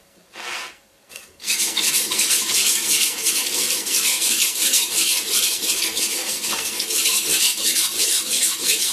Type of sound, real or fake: fake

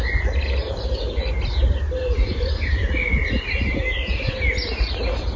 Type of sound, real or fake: real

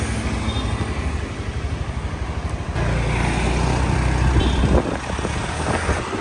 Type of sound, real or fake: real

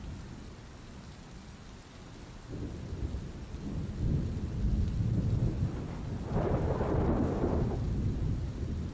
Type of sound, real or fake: real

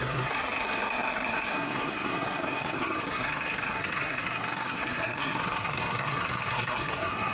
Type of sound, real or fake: fake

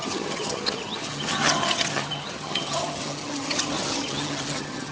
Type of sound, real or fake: fake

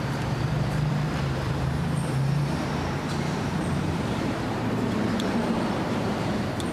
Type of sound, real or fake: fake